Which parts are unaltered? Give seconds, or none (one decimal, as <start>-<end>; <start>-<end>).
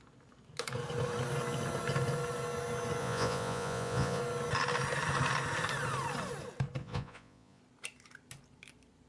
0.0-3.0; 4.2-6.8; 7.6-9.1